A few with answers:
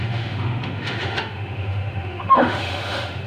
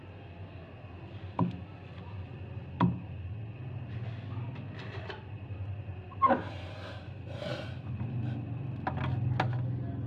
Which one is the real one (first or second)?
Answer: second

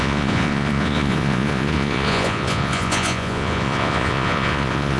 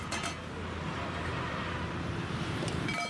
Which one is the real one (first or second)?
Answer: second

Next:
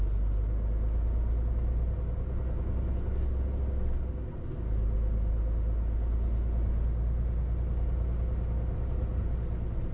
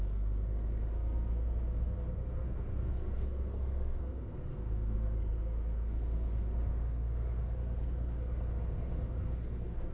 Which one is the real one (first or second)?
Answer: first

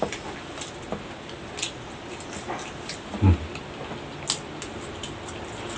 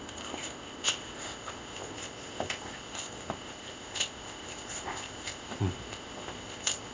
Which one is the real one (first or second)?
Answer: first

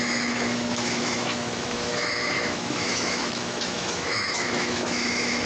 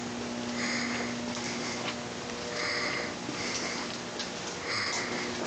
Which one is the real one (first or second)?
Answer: second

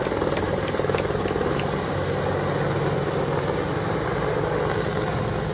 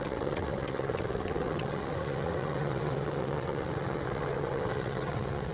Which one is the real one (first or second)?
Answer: first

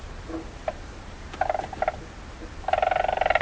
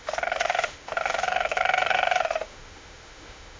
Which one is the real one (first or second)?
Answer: first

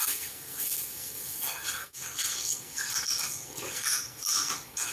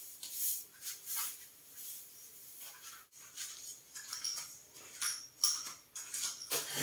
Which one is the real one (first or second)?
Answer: second